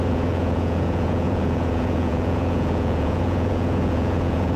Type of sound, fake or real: fake